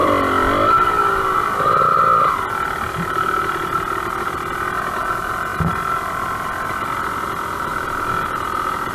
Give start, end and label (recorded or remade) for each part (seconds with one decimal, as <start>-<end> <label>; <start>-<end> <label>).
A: 0.0-8.9 recorded